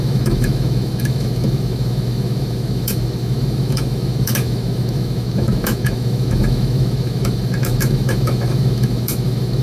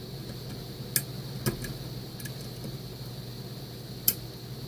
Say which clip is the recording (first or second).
second